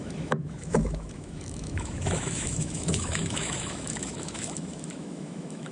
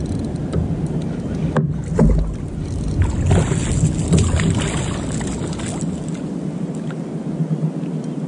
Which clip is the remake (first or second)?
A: first